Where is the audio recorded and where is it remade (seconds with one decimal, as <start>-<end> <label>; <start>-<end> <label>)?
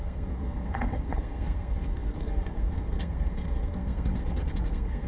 0.0-5.1 remade